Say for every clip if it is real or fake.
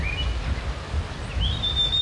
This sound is real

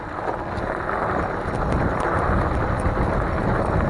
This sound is real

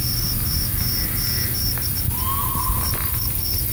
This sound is real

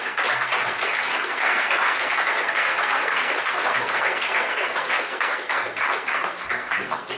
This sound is fake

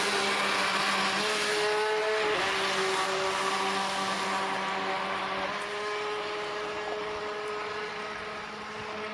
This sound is real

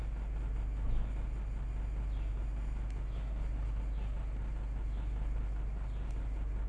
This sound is real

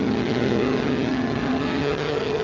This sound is fake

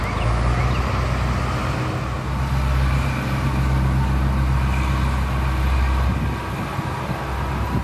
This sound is real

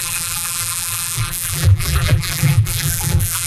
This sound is fake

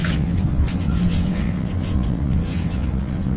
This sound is fake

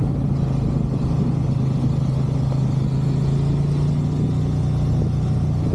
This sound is real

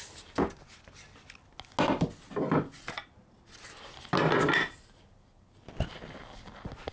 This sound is real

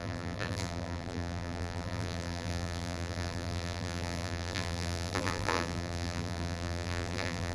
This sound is fake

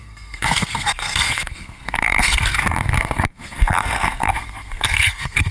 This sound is fake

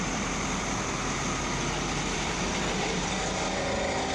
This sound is fake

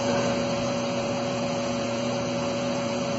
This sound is fake